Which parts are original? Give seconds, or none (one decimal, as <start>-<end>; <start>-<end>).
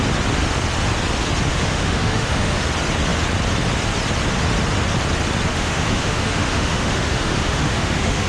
0.0-1.5; 2.6-5.5